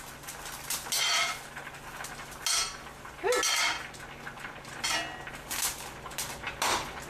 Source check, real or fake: real